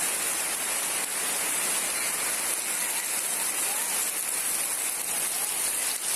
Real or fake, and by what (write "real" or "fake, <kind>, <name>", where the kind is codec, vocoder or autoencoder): real